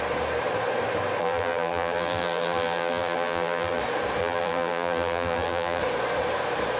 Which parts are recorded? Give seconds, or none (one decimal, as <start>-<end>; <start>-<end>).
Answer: 0.0-1.2; 3.8-4.2; 5.8-6.8